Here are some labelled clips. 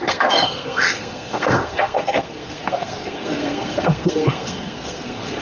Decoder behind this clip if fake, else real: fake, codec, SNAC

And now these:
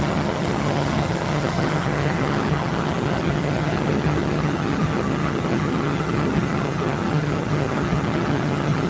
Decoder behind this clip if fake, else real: fake, vocoder, HiFi-GAN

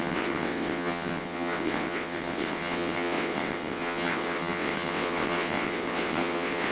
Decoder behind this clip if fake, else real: fake, vocoder, WaveNeXt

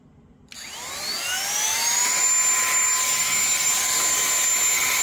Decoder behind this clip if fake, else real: real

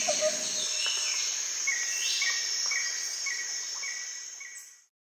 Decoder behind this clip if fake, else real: real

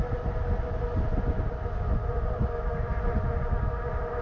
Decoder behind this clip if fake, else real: real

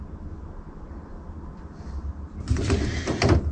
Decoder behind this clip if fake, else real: real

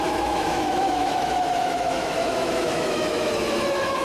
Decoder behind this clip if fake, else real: fake, autoencoder, DAC-VAE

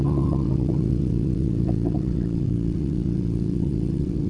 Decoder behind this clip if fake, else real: fake, vocoder, WaveNeXt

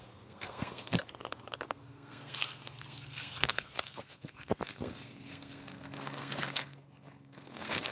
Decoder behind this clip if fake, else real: fake, codec, SNAC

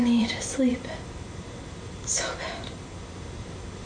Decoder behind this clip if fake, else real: fake, vocoder, BigVGAN v2